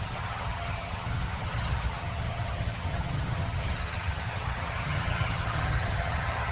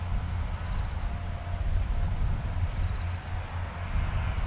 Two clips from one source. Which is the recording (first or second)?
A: second